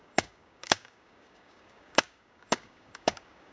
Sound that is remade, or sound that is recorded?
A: remade